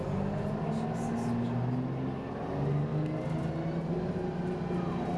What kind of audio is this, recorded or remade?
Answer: recorded